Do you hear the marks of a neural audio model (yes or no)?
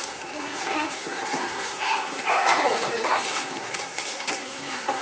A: yes